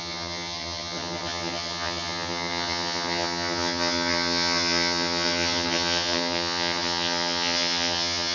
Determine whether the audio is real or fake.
fake